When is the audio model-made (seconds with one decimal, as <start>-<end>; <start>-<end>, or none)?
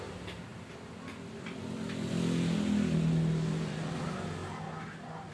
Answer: none